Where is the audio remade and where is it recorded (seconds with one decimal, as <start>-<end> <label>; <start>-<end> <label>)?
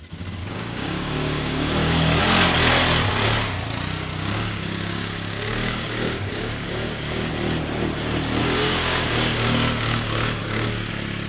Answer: 0.0-0.4 recorded; 0.4-2.2 remade; 2.2-4.1 recorded; 4.1-7.3 remade; 7.3-8.4 recorded; 8.4-10.9 remade; 10.9-11.3 recorded